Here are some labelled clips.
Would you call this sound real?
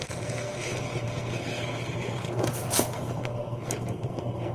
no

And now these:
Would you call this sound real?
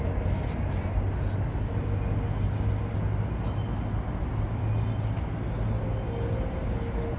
yes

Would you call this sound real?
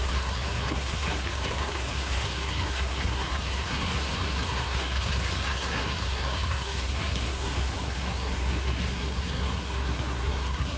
no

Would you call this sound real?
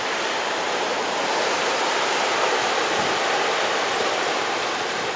no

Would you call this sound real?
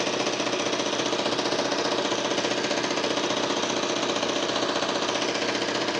yes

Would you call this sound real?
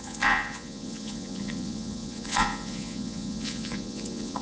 no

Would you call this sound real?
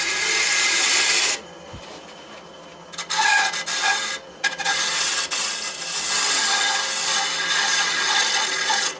yes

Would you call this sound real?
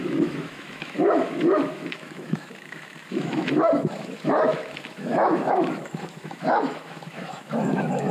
no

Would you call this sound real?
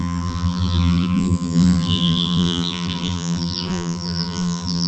no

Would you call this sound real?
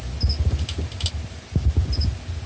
yes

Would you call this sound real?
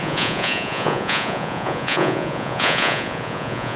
no